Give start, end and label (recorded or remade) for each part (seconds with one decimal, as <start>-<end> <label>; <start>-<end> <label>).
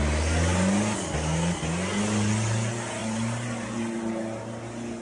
0.0-3.0 recorded; 3.0-3.8 remade; 3.8-5.0 recorded